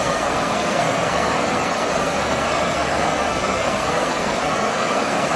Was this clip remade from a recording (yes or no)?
yes